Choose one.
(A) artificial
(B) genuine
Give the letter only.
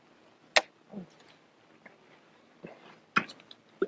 B